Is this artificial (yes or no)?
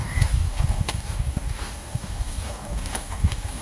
yes